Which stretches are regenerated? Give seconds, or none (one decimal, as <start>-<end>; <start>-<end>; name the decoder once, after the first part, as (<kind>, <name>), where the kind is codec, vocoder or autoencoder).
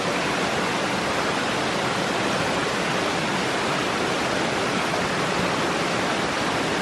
none